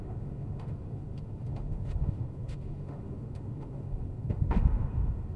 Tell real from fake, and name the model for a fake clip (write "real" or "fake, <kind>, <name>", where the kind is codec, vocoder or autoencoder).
fake, autoencoder, DAC-VAE